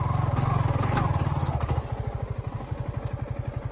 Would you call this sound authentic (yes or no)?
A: yes